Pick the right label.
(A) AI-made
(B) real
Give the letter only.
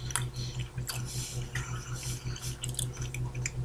B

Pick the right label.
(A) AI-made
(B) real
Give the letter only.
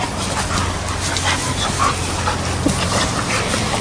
B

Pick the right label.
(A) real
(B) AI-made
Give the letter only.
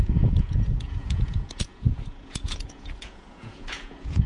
B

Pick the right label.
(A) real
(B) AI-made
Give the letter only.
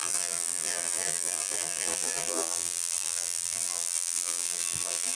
B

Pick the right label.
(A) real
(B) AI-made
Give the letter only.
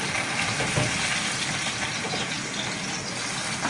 A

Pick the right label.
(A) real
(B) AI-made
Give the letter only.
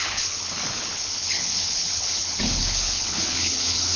B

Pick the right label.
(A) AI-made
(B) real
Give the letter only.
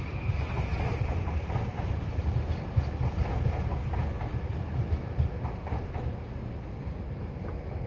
B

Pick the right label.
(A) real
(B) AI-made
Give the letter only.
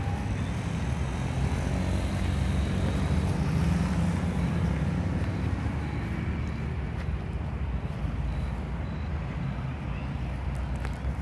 A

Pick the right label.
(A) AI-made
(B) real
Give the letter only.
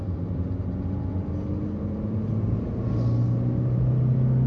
B